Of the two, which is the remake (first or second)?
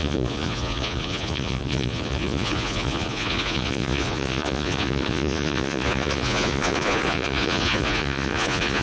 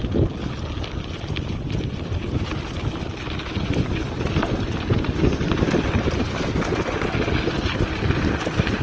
first